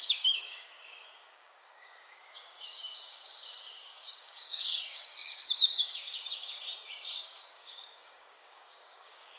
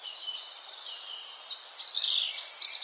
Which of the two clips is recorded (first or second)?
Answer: second